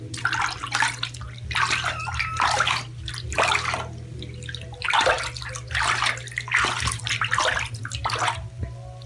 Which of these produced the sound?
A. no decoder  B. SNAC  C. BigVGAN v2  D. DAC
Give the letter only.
A